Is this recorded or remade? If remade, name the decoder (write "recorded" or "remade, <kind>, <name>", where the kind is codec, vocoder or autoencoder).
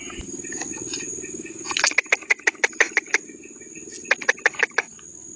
recorded